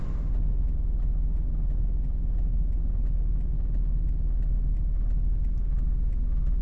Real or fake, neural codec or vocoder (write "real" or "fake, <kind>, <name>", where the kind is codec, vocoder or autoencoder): real